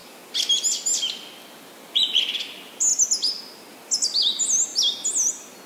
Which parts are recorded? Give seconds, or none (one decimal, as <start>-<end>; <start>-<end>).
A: 0.0-5.7